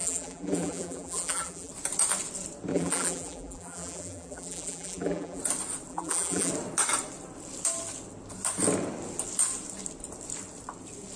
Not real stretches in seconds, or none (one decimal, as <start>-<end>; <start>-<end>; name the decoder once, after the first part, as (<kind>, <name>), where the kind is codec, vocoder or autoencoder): 0.0-1.7 (vocoder, BigVGAN v2); 2.7-5.4; 5.9-6.5

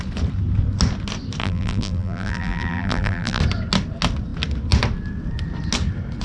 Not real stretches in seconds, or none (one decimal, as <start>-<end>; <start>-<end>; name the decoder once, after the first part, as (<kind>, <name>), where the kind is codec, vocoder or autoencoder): 1.4-3.4 (vocoder, BigVGAN v2)